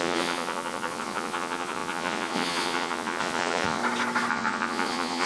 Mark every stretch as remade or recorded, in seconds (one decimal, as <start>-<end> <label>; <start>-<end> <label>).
0.0-3.8 remade; 3.8-4.3 recorded; 4.3-5.3 remade

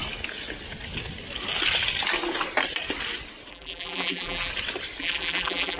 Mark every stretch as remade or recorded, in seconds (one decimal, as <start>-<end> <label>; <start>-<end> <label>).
0.0-3.5 recorded; 3.5-4.5 remade; 4.5-5.0 recorded; 5.0-5.8 remade

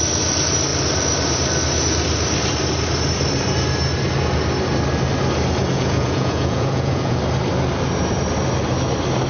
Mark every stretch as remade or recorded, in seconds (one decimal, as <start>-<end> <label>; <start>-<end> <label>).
0.0-5.7 recorded; 5.7-7.2 remade; 7.2-9.3 recorded

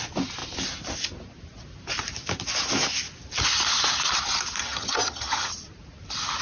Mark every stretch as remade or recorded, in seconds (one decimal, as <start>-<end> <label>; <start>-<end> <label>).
0.0-4.6 recorded; 4.6-5.5 remade; 5.5-6.4 recorded